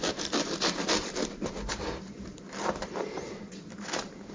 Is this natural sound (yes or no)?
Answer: no